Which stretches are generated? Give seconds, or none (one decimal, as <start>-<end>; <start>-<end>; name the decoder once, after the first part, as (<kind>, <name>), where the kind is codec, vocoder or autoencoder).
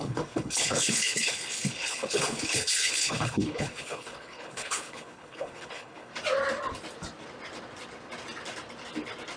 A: 0.0-6.1 (codec, HILCodec)